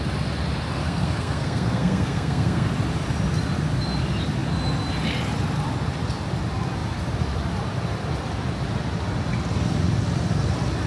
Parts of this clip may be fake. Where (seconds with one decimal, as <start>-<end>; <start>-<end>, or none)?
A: 0.8-2.7